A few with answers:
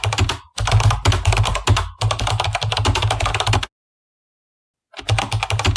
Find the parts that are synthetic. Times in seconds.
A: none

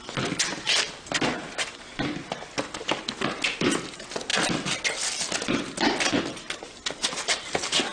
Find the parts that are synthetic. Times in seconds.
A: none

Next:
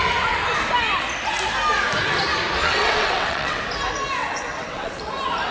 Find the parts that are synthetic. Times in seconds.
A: 2.6-3.6; 4.2-5.1